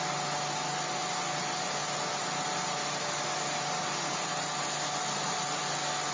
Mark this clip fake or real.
real